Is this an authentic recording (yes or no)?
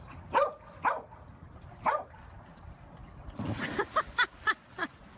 yes